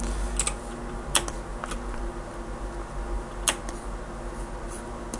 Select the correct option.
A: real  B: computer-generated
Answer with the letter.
A